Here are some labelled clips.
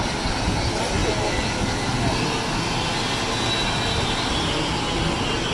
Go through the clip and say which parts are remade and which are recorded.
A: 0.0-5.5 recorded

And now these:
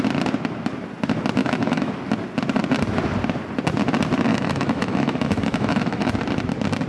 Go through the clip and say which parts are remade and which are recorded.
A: 0.0-1.4 recorded; 1.4-1.9 remade; 1.9-4.3 recorded; 4.3-6.1 remade; 6.1-6.9 recorded

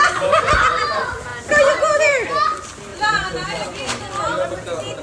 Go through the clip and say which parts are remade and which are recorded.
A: 0.0-2.9 recorded; 2.9-4.2 remade; 4.2-5.0 recorded

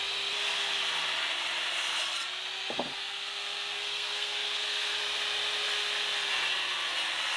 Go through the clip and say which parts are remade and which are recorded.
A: 0.0-3.0 recorded; 3.0-5.0 remade; 5.0-7.4 recorded

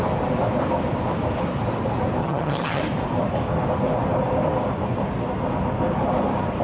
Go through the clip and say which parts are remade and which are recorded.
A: 0.0-2.2 recorded; 2.2-2.8 remade; 2.8-6.6 recorded